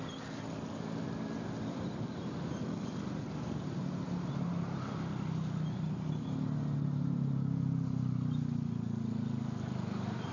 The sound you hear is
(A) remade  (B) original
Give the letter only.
B